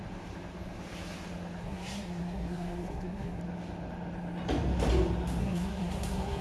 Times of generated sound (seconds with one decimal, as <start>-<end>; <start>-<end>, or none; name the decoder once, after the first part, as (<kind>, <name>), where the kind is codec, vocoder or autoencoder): 1.6-3.4 (codec, SNAC); 5.4-6.4

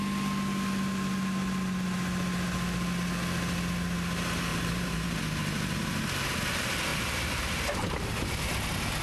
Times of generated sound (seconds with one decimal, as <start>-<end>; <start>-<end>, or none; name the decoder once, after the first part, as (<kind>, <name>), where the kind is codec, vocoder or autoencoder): 4.5-5.2 (vocoder, BigVGAN v2); 6.9-8.6

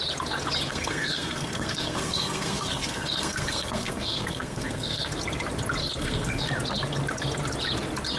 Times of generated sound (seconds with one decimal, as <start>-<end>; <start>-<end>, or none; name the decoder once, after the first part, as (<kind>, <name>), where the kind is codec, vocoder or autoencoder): 0.7-5.1 (codec, SNAC); 5.8-6.5